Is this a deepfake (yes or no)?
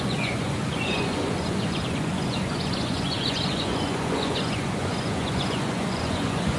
yes